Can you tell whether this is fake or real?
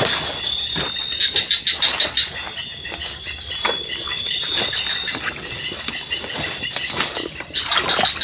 real